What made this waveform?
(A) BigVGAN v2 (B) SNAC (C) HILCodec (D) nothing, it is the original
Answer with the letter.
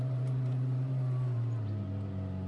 D